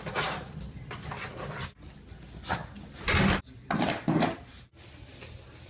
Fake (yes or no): no